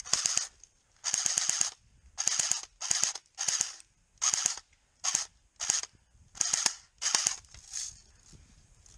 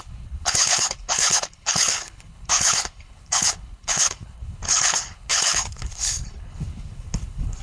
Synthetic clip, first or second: second